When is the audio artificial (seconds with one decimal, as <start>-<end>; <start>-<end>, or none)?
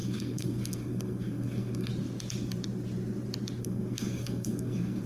0.0-1.9; 3.6-5.1